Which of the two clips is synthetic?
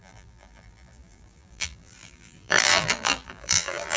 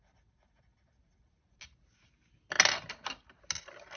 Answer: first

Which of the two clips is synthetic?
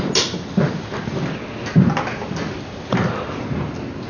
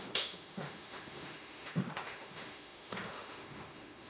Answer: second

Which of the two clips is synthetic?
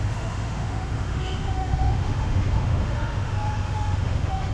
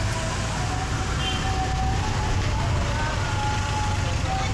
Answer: first